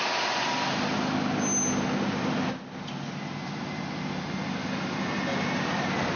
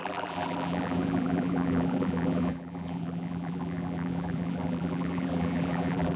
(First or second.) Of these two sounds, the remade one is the second